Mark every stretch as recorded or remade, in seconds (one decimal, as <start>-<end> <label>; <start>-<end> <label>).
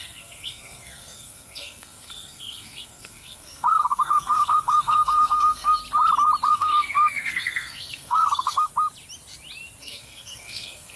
0.0-5.8 remade; 5.8-6.5 recorded; 6.5-8.7 remade; 8.7-9.8 recorded; 9.8-11.0 remade